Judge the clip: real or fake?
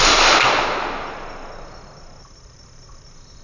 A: real